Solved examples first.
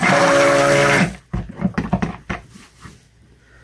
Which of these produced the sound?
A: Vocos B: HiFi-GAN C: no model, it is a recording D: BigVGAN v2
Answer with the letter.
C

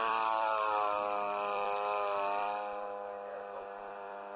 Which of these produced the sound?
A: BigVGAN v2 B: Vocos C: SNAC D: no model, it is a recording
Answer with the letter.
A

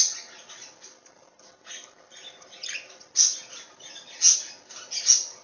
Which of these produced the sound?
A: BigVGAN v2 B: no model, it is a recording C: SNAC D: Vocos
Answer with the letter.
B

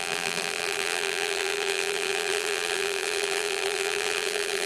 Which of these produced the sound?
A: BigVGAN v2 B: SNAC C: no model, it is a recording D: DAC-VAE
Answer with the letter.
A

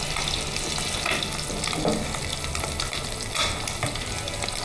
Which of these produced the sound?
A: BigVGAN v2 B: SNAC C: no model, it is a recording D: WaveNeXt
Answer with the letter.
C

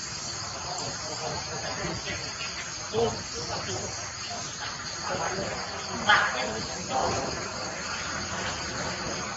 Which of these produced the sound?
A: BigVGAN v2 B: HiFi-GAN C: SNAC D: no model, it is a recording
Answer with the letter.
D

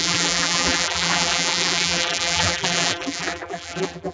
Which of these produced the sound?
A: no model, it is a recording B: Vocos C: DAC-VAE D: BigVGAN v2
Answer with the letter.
D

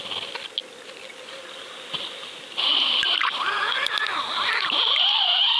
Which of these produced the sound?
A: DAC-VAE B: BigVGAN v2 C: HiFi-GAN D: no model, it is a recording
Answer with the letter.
D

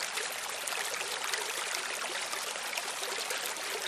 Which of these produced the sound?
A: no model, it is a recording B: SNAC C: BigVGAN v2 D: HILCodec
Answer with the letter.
C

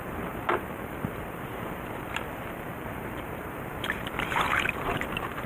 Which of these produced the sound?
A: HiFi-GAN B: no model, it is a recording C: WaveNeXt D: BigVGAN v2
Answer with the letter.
D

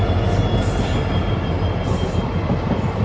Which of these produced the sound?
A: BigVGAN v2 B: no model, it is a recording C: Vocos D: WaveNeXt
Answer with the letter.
B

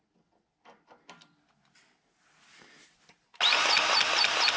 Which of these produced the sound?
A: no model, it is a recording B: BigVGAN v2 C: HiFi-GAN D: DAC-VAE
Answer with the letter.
A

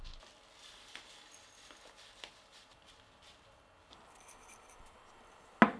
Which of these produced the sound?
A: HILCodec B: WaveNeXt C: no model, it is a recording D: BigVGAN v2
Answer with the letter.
C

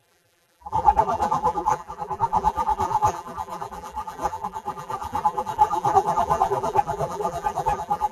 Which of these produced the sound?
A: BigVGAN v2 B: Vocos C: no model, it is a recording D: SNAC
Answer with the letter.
A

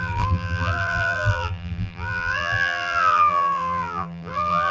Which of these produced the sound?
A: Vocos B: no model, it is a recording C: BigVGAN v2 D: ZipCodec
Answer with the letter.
C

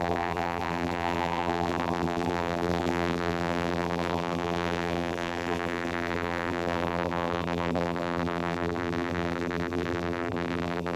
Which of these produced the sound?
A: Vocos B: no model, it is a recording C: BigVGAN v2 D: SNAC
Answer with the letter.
C